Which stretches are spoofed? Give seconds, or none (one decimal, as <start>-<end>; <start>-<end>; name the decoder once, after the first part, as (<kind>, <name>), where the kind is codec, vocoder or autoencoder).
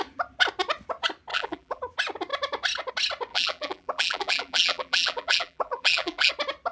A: 1.3-1.8 (vocoder, BigVGAN v2); 3.3-6.3